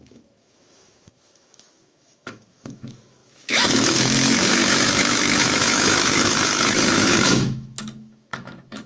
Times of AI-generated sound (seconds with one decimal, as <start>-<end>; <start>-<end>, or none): 0.0-8.9